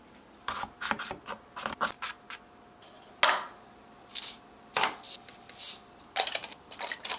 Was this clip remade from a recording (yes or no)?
no